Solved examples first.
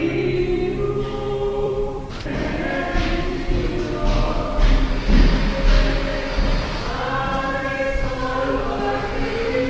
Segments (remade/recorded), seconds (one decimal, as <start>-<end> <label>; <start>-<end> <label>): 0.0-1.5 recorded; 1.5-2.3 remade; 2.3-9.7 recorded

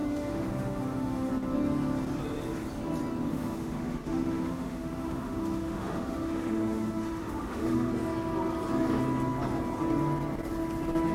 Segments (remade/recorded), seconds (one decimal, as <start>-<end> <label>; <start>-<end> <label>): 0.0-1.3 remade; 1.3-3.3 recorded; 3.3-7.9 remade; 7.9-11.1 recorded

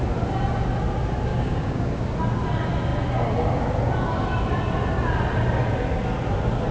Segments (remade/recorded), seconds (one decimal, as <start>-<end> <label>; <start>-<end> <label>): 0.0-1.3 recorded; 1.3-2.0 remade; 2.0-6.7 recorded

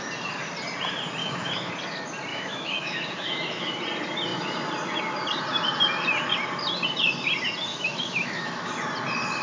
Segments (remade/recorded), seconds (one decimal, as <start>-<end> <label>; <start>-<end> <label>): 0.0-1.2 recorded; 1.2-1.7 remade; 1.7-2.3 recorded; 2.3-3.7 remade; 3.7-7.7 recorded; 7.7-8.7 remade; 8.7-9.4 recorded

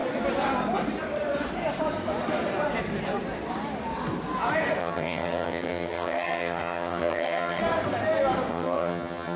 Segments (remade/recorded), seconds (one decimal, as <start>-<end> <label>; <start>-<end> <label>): 0.0-4.8 recorded; 4.8-7.6 remade; 7.6-8.5 recorded; 8.5-9.4 remade

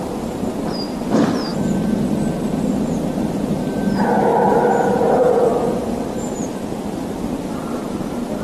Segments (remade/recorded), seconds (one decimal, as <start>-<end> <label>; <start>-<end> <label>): 0.0-1.5 remade; 1.5-3.3 recorded; 3.3-8.4 remade

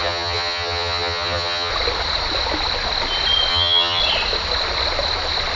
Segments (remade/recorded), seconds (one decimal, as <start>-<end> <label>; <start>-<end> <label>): 0.0-1.7 remade; 1.7-3.5 recorded; 3.5-4.0 remade; 4.0-5.6 recorded

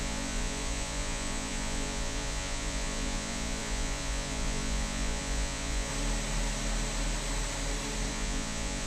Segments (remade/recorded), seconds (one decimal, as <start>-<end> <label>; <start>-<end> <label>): 0.0-5.9 remade; 5.9-8.1 recorded; 8.1-8.9 remade